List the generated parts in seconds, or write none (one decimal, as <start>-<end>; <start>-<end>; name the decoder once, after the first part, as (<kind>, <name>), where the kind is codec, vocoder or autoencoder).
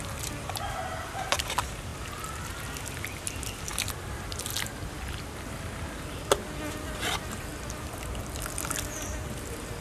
3.7-5.5 (vocoder, BigVGAN v2)